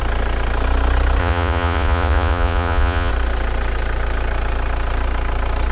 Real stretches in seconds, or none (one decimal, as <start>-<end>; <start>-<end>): 0.0-1.2; 3.1-5.7